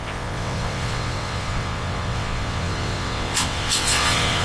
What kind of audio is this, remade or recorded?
remade